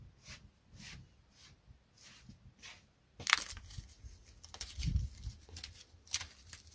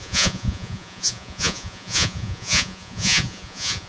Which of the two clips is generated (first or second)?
second